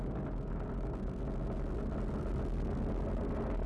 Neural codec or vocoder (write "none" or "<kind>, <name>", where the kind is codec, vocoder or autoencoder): none